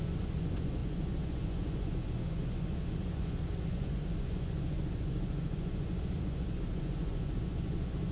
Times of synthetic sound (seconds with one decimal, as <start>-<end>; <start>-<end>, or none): 0.0-8.1